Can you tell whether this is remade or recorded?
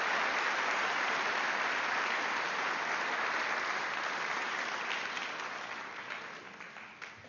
recorded